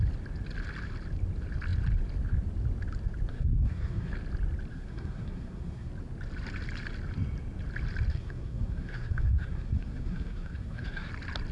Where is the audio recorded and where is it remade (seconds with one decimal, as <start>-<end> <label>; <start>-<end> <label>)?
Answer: 0.0-3.3 recorded; 3.3-4.1 remade; 4.1-4.7 recorded; 4.7-5.9 remade; 5.9-8.1 recorded; 8.1-11.1 remade; 11.1-11.5 recorded